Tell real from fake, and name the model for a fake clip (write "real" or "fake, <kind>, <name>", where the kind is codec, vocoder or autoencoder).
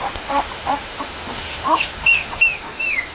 fake, autoencoder, DAC-VAE